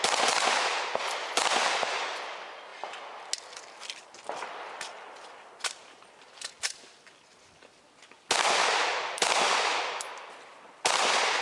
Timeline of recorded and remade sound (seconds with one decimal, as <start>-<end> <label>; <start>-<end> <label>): 0.0-11.4 recorded